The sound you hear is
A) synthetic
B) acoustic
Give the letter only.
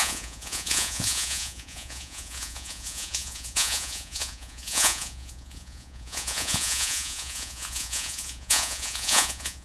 A